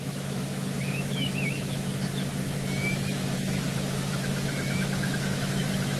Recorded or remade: remade